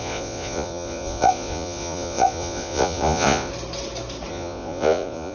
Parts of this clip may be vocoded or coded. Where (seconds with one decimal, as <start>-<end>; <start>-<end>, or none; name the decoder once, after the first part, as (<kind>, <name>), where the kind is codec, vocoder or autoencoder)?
0.0-3.5 (vocoder, Vocos); 4.3-5.3